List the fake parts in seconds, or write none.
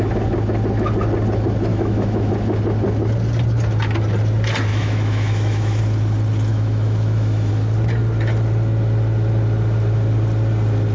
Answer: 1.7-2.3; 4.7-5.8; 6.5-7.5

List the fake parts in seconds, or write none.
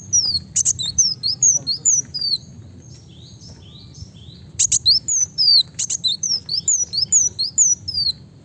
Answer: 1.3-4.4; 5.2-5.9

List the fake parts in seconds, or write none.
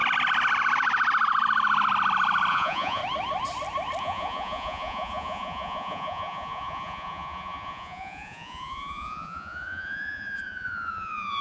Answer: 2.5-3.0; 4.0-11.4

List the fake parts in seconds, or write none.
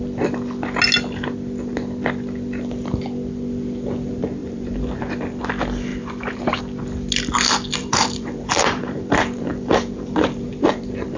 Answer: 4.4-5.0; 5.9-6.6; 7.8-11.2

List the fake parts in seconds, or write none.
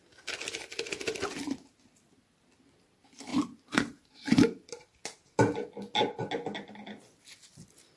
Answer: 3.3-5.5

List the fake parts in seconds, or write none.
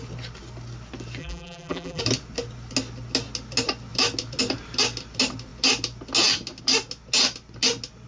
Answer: 1.2-2.0